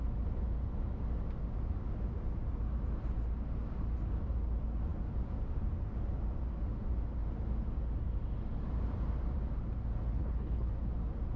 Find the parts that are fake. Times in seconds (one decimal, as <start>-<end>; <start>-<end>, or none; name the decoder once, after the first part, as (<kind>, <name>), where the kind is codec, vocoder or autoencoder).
10.1-10.7 (codec, HILCodec)